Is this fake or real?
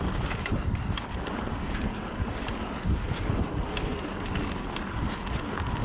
real